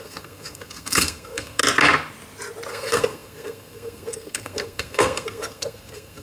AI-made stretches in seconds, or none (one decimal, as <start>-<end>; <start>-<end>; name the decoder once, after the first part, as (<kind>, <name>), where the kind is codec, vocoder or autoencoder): 0.0-1.6 (codec, SNAC); 2.7-6.2